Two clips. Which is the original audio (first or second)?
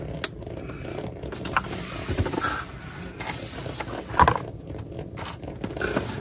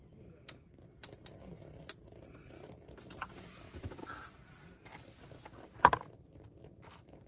first